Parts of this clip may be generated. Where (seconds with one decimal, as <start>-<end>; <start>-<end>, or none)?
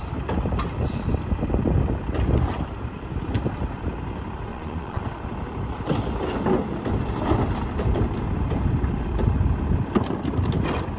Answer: 4.5-5.0